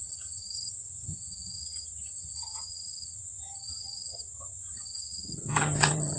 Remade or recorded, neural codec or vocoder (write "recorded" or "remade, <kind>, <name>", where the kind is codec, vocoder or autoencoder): remade, vocoder, HiFi-GAN